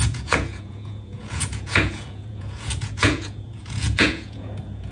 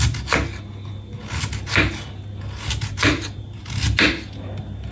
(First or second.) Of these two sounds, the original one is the second